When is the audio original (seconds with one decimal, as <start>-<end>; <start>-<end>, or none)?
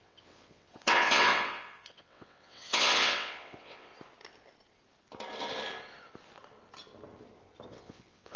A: 3.9-7.7